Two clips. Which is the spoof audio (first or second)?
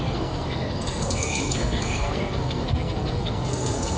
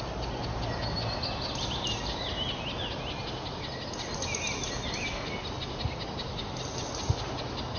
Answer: first